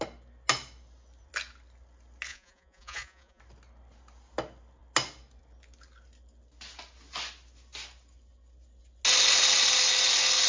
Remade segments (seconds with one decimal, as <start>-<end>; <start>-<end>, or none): 2.3-3.4